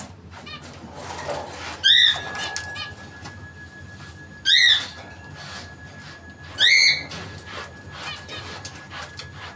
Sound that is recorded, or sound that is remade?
recorded